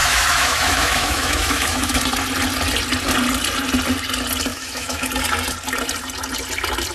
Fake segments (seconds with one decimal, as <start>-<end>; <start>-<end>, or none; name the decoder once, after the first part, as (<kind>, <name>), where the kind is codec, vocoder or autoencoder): 0.0-2.0 (autoencoder, DAC-VAE); 4.5-5.1